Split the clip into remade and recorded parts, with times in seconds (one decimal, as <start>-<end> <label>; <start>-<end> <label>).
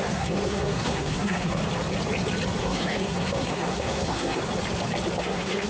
0.0-1.6 remade; 1.6-2.6 recorded; 2.6-4.4 remade; 4.4-5.2 recorded; 5.2-5.7 remade